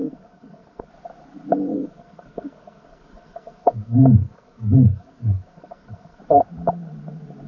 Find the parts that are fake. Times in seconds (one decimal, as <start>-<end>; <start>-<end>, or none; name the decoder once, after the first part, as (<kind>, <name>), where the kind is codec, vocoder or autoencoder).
0.0-0.9 (codec, SNAC); 1.7-6.2